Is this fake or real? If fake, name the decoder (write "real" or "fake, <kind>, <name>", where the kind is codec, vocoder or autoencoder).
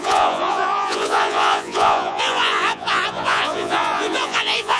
fake, vocoder, Vocos